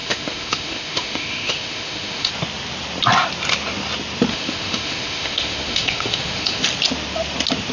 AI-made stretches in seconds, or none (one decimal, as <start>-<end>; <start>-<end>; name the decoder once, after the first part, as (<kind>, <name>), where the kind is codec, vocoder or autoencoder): 0.0-2.3 (autoencoder, DAC-VAE); 4.3-6.6